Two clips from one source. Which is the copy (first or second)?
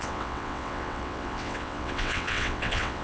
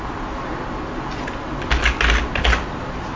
first